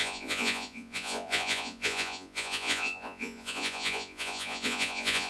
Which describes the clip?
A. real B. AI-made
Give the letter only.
B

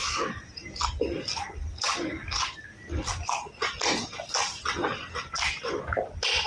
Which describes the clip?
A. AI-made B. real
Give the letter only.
B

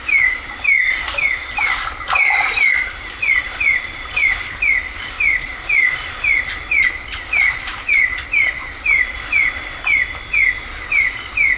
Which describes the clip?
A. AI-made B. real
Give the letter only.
B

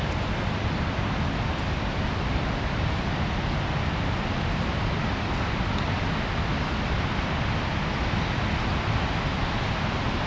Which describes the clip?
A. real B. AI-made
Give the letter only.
A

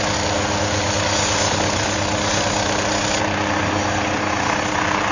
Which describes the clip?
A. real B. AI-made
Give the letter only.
A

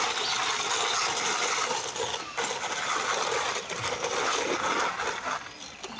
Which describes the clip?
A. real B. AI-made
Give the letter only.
A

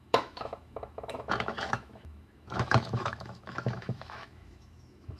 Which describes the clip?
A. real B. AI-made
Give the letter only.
B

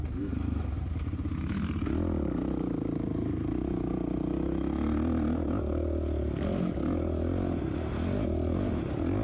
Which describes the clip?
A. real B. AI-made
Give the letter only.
A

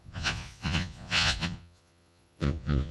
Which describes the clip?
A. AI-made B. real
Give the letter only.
A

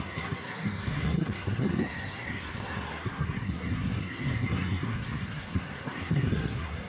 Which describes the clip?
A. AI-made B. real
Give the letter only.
A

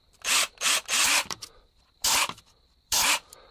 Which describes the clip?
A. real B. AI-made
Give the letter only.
B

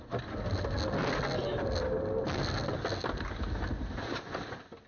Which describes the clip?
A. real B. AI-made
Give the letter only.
A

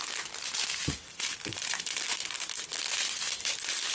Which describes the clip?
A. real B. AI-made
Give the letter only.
A